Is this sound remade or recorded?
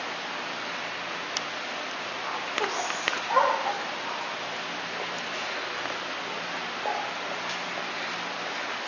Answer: recorded